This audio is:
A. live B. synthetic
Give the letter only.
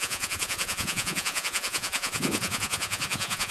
B